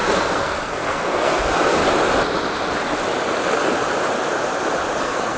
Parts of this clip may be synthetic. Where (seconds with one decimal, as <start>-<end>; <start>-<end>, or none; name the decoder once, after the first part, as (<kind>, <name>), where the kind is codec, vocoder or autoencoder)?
0.0-1.8 (codec, SNAC); 5.0-5.4